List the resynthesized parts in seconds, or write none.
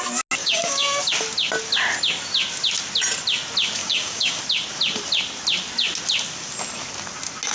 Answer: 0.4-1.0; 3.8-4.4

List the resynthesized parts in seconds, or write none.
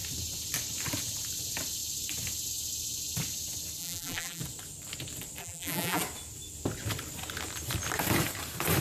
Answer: 3.8-4.4; 5.4-6.0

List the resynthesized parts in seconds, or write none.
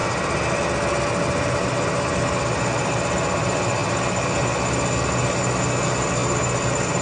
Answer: none